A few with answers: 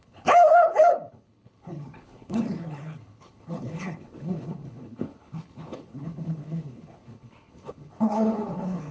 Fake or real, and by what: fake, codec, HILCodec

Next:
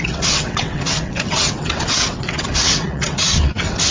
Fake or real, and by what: fake, vocoder, WaveNeXt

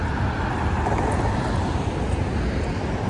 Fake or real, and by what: real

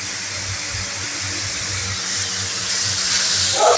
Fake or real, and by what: real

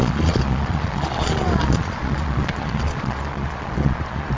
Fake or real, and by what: fake, vocoder, Vocos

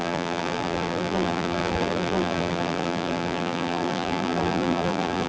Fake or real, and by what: fake, vocoder, BigVGAN v2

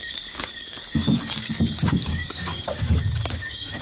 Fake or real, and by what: fake, codec, DAC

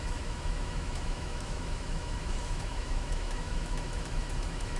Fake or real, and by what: fake, autoencoder, DAC-VAE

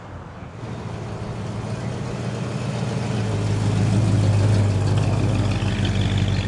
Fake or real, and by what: real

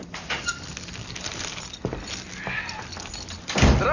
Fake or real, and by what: real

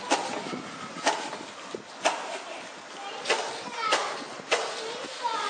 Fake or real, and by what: real